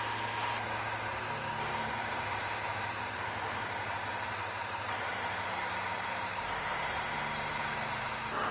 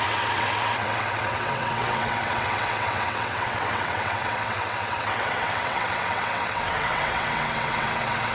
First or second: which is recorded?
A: first